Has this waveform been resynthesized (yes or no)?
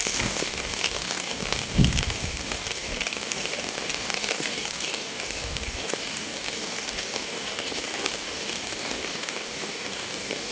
yes